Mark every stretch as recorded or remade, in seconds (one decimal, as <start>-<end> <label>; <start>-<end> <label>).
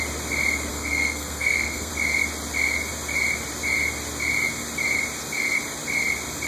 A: 0.0-0.7 recorded; 0.7-1.9 remade; 1.9-6.5 recorded